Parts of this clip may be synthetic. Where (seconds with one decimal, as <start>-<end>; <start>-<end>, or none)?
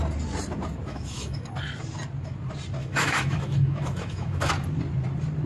0.9-1.5; 2.8-4.5